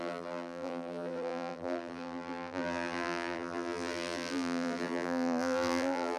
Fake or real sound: fake